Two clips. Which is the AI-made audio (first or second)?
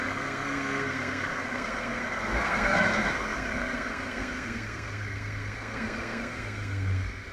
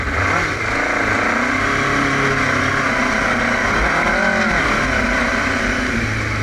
first